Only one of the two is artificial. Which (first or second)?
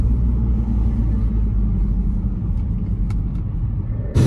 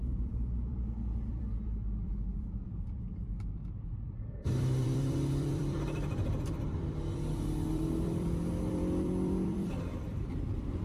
second